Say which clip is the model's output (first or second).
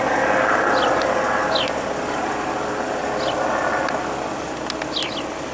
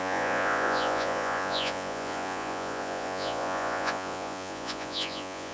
second